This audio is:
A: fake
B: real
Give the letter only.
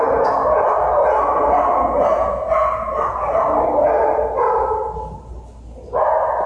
B